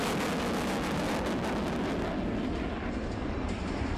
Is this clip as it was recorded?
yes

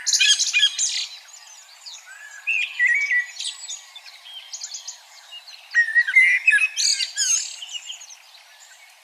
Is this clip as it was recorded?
yes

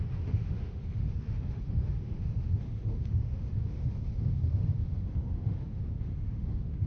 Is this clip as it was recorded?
no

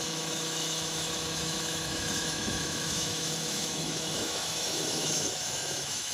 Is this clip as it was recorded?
no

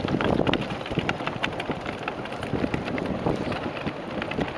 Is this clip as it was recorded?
yes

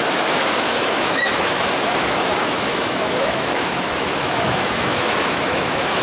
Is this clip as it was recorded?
no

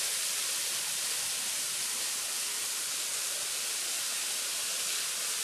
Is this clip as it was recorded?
yes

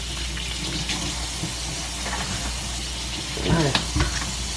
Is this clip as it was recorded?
yes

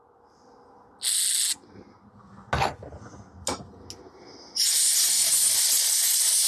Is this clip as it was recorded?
yes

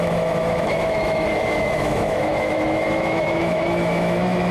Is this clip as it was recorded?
no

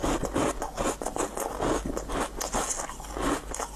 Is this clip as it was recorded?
yes